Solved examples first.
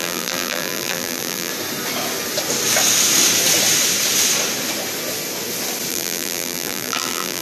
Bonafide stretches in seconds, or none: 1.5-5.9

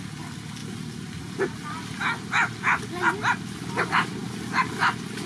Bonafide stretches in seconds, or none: 0.0-5.3

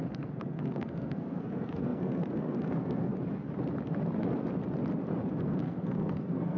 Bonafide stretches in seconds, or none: 3.1-5.3

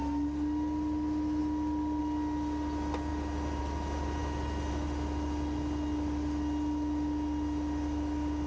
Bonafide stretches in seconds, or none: 0.0-8.5

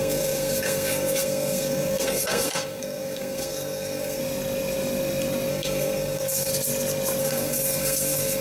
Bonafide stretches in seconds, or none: 4.2-5.5; 6.5-7.2

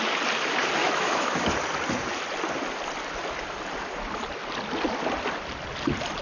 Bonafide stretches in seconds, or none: 0.0-0.8; 1.5-6.2